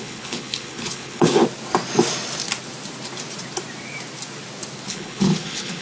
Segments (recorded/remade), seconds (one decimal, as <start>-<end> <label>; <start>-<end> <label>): 0.0-1.4 remade; 1.4-4.9 recorded; 4.9-5.8 remade